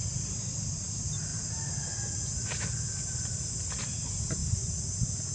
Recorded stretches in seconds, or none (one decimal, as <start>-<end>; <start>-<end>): 0.0-5.3